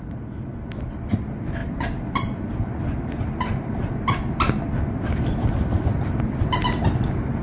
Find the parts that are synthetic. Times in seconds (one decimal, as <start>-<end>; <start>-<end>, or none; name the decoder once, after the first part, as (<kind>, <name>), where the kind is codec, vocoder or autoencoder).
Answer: none